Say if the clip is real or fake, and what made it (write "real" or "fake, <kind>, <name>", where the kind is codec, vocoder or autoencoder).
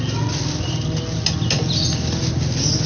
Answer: real